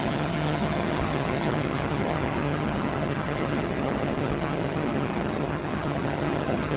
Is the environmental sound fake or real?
fake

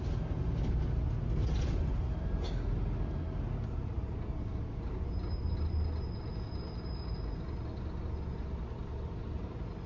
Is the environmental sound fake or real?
real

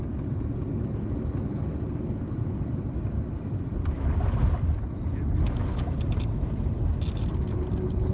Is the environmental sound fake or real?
real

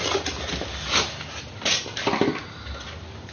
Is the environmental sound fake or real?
real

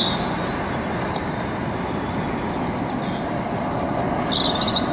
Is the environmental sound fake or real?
real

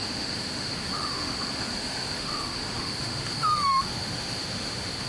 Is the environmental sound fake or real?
fake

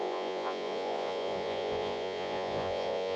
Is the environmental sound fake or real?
fake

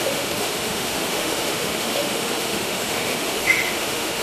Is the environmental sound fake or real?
fake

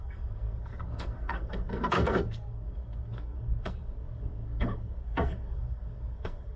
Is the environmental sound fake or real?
fake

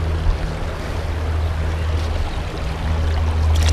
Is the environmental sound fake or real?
real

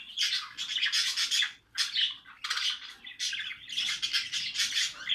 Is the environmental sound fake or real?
real